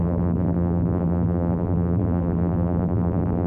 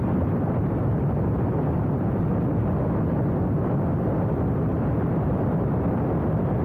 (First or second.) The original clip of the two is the second